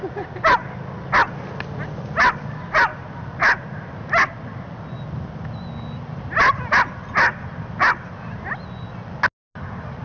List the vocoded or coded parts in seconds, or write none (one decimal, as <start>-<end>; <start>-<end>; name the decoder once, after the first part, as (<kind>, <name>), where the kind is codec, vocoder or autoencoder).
none